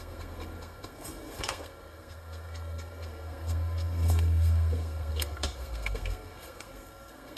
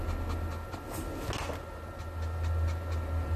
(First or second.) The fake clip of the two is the first